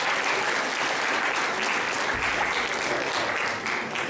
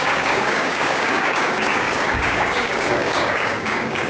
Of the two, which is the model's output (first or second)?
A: second